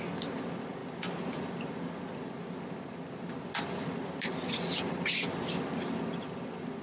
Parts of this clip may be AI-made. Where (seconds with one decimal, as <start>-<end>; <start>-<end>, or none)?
none